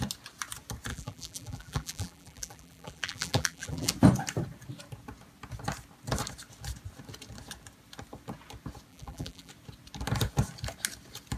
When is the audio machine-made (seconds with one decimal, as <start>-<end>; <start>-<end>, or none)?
0.9-3.9; 8.9-9.5